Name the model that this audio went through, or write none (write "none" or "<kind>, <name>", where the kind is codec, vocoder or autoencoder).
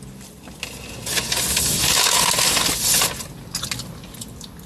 none